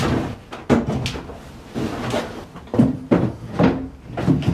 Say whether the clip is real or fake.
real